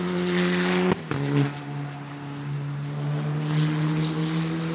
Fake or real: real